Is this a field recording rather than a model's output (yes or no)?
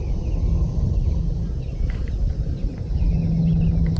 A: yes